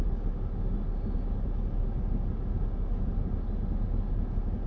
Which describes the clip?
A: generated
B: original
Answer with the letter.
B